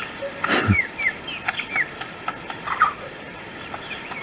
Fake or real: real